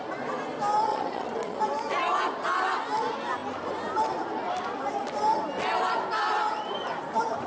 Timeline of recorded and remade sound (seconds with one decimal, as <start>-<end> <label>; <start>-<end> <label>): 0.0-0.9 recorded; 0.9-1.6 remade; 1.6-7.5 recorded